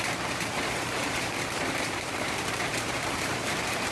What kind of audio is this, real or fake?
fake